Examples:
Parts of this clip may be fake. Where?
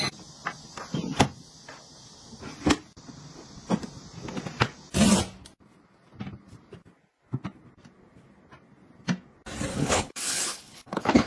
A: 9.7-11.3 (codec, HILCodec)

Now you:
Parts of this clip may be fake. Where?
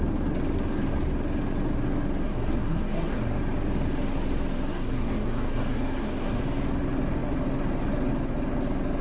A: 2.2-3.4 (codec, SNAC); 4.7-6.4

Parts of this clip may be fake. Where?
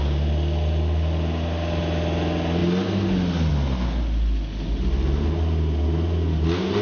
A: none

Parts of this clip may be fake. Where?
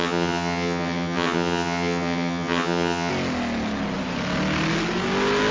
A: 0.0-3.1 (vocoder, HiFi-GAN)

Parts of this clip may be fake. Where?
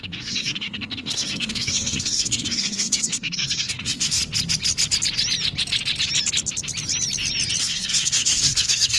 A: 0.0-4.2 (codec, SNAC); 7.6-9.0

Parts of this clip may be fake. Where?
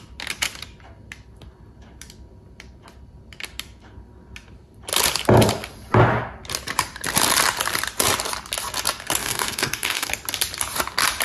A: 9.2-10.1 (codec, DAC)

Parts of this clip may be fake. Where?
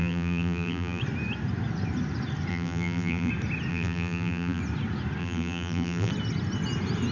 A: 0.0-1.0 (vocoder, BigVGAN v2); 2.5-3.3; 3.7-4.6; 5.2-6.1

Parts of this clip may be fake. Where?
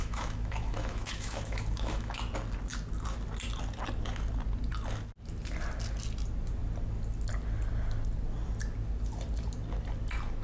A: 0.0-2.2 (autoencoder, DAC-VAE)